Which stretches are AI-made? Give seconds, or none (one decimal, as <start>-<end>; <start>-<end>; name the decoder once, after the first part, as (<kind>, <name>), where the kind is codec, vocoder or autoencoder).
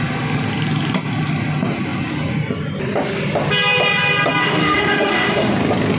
4.4-5.5 (autoencoder, DAC-VAE)